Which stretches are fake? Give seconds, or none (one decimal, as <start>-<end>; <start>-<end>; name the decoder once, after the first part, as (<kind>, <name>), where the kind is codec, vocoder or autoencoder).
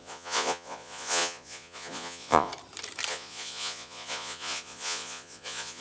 0.0-2.5 (vocoder, Vocos); 3.1-5.8